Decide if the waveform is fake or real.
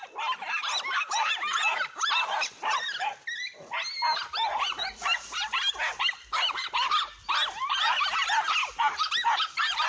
real